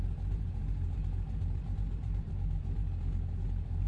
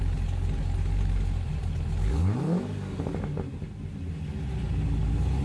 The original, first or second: second